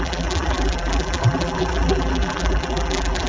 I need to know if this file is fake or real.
fake